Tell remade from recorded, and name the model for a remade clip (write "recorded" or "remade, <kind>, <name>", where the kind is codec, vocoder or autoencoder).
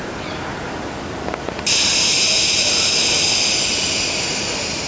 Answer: recorded